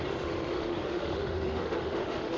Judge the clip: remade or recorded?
remade